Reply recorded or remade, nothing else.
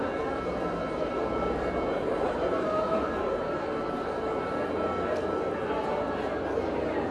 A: recorded